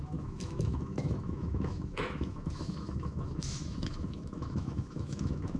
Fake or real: fake